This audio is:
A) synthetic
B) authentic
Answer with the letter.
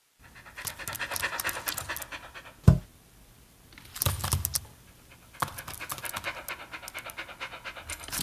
B